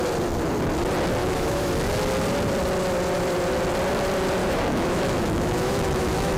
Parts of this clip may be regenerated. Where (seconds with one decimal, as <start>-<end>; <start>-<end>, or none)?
1.2-1.7; 4.4-6.4